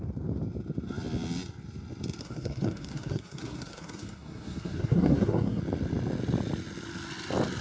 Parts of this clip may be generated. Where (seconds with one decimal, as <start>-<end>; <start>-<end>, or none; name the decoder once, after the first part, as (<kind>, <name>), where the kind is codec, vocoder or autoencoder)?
2.2-5.6 (codec, SNAC)